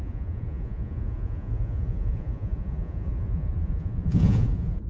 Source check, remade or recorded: remade